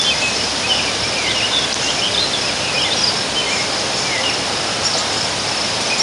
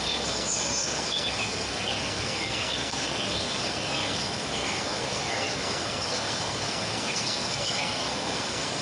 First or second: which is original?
first